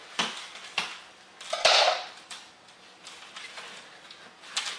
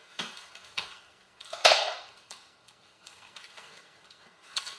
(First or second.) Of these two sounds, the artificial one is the second